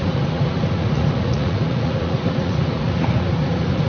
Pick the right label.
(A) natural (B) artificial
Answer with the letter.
B